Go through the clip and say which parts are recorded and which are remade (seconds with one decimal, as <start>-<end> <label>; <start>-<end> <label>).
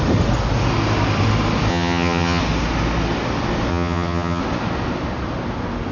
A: 0.0-1.7 recorded; 1.7-2.4 remade; 2.4-3.7 recorded; 3.7-4.4 remade; 4.4-5.9 recorded